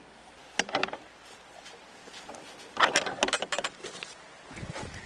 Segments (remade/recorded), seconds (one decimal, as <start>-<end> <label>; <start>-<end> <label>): 0.0-5.1 recorded